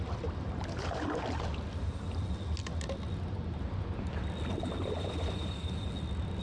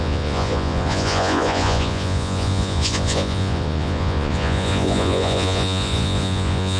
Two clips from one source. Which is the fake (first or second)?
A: second